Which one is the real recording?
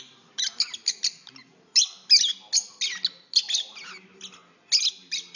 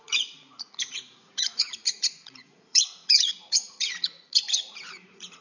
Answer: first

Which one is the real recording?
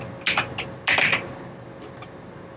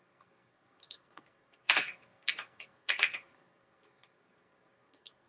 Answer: first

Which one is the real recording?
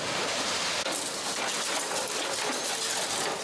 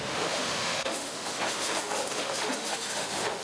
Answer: first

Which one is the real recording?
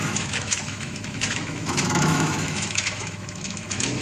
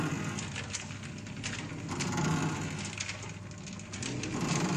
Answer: second